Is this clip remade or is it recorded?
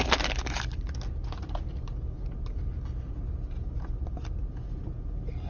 recorded